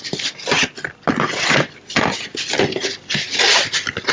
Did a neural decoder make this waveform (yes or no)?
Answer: no